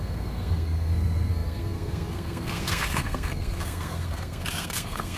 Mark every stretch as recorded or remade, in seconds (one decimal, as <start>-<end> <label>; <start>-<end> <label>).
0.0-5.2 remade